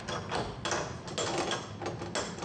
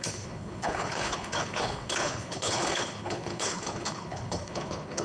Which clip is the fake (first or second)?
second